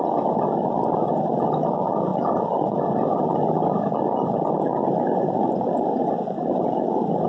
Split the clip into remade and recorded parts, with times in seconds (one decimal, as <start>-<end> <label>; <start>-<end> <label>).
0.0-7.3 recorded